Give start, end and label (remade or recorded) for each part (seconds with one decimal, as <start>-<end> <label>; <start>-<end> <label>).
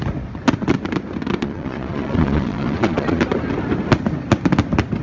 0.0-1.4 recorded; 1.4-3.2 remade; 3.2-5.0 recorded